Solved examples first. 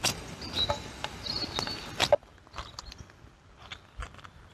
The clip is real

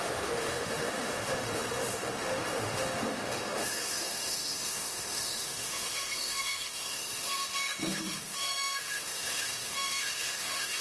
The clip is fake